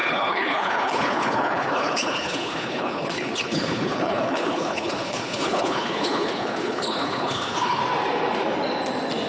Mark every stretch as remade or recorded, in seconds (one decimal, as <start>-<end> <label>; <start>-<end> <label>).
0.0-7.8 remade; 7.8-9.3 recorded